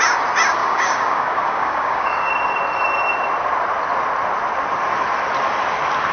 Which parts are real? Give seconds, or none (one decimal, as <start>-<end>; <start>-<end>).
0.0-0.6; 2.3-6.1